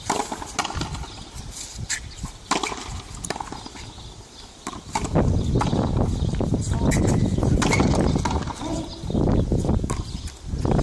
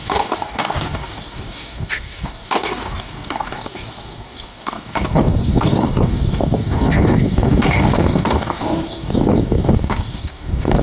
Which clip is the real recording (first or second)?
first